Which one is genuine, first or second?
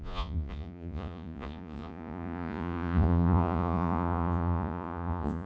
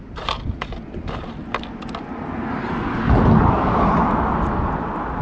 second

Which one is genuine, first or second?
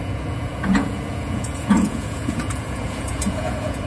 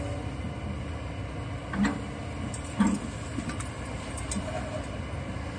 second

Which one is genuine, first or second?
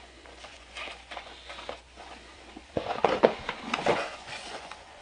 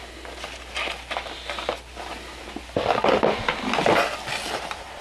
second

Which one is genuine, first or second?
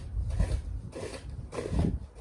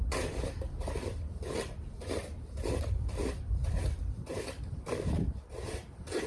first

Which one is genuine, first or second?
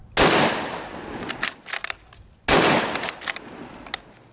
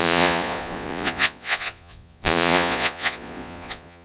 first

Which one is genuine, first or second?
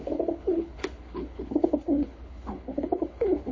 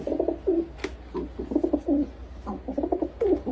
second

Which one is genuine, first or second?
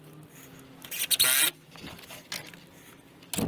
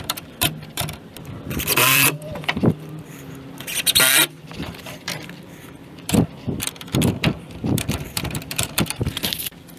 first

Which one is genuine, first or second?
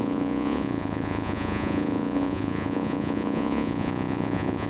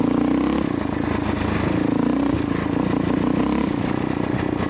second